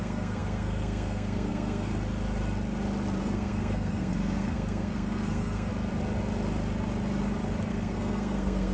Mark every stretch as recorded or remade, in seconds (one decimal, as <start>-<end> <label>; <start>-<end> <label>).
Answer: 0.0-1.9 remade; 1.9-3.2 recorded; 3.2-5.7 remade; 5.7-7.7 recorded; 7.7-8.7 remade